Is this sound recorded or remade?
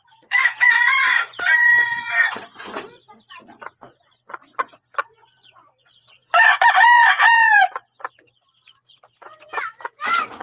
remade